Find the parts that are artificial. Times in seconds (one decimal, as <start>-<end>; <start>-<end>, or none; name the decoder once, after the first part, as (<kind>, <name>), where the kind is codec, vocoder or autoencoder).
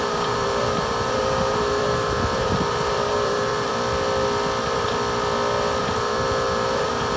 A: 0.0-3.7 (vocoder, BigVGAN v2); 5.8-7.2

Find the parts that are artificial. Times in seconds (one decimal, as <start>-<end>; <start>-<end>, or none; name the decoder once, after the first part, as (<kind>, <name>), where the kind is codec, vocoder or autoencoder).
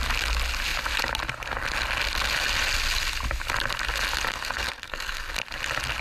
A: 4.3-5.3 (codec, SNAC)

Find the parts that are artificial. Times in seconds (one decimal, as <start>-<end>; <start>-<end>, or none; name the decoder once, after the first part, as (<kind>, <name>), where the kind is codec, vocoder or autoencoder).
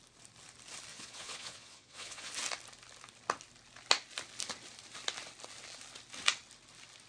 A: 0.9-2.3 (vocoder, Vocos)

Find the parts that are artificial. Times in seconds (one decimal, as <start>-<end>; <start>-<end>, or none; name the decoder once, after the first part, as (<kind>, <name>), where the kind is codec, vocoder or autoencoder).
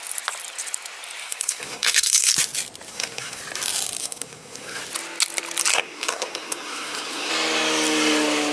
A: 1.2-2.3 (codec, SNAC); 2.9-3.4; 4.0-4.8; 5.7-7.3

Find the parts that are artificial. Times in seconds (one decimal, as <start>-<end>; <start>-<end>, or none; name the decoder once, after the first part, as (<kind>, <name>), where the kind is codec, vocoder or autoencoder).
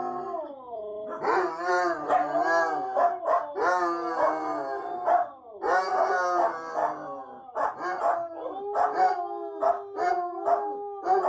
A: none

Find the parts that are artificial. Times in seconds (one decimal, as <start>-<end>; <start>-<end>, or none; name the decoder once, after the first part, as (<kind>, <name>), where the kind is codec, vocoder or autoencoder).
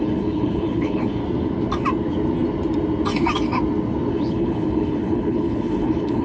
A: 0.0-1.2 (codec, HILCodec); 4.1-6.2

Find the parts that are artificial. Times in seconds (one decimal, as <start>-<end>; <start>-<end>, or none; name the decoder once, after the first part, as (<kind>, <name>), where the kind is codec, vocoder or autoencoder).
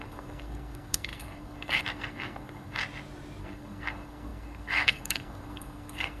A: 0.0-2.8 (codec, SNAC); 3.4-6.2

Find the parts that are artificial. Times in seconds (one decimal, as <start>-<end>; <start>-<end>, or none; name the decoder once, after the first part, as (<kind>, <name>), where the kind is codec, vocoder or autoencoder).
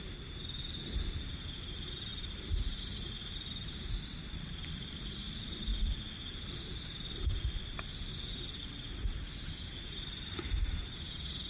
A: 0.0-5.7 (vocoder, BigVGAN v2); 9.5-11.5